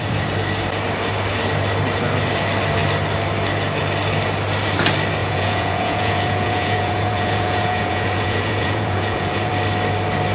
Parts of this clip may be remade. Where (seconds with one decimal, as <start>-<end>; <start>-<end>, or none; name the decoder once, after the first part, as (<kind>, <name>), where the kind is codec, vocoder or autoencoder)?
5.2-9.5 (vocoder, Vocos)